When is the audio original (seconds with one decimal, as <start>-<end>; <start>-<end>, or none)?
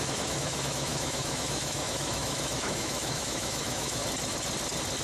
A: 4.0-5.0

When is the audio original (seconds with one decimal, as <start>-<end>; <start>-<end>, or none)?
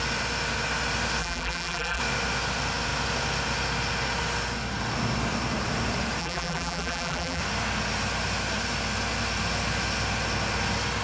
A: 0.0-1.2; 2.0-6.2; 7.4-11.0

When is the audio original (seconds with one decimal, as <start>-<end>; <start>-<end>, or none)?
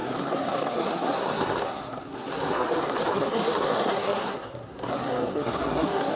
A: none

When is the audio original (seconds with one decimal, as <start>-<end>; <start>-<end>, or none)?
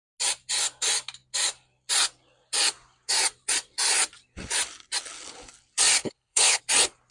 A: 0.0-6.0; 6.6-7.1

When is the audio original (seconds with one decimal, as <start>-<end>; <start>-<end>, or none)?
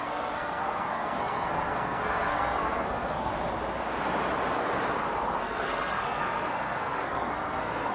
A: 3.3-5.4